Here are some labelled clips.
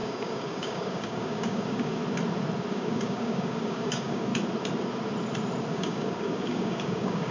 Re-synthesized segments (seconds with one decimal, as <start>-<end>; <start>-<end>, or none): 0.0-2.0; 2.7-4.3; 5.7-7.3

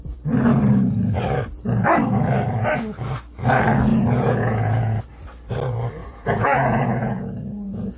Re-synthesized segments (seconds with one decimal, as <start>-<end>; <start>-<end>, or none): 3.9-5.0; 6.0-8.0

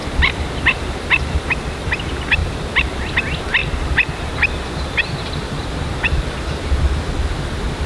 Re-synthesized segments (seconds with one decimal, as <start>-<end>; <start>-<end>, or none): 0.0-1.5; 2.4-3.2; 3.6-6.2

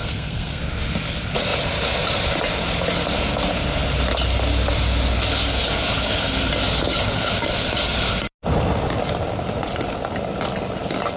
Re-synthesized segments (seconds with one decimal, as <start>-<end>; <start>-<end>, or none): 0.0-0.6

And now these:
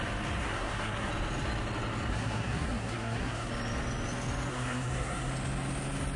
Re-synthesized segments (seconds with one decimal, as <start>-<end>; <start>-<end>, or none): 0.4-1.1; 2.1-3.5; 4.5-5.3